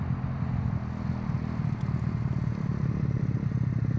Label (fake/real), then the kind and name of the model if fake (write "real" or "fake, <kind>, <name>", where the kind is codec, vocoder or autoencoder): real